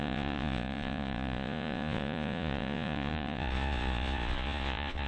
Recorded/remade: remade